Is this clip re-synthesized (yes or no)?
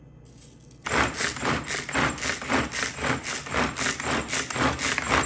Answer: no